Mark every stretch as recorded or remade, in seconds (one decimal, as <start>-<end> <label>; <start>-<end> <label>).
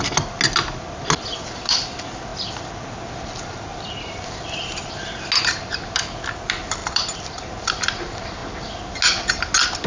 0.0-2.3 recorded; 2.3-4.9 remade; 4.9-6.8 recorded; 6.8-7.5 remade; 7.5-9.9 recorded